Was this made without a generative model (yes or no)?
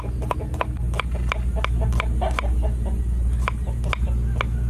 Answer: yes